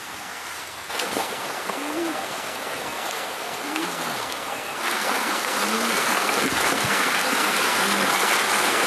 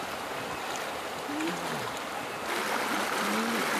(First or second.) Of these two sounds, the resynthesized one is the first